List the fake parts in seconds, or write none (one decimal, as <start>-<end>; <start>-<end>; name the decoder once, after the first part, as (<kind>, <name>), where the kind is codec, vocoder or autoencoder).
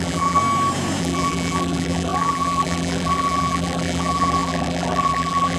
0.0-0.4 (vocoder, BigVGAN v2); 1.0-5.6